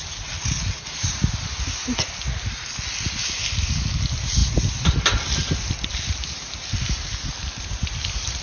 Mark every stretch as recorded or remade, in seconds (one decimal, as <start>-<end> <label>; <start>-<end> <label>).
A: 0.0-8.4 recorded